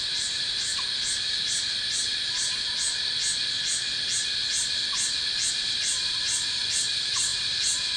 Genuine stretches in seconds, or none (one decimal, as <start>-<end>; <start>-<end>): 0.7-5.5